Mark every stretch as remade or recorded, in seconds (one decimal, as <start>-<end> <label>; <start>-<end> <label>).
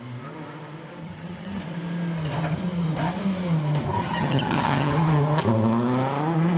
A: 0.0-1.0 recorded; 1.0-1.6 remade; 1.6-4.0 recorded; 4.0-4.9 remade; 4.9-6.6 recorded